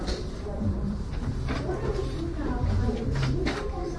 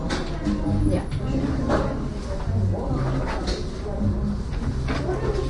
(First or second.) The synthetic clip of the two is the first